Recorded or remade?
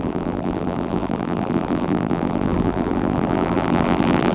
remade